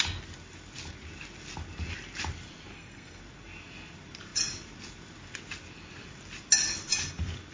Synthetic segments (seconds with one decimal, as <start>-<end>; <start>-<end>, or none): 2.7-3.2

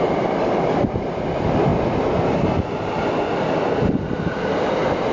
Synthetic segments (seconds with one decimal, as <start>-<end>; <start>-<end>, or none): none

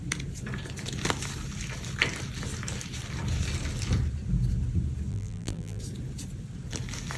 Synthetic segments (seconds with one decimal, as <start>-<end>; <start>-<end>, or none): 5.1-5.8